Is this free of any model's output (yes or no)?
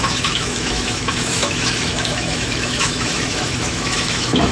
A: no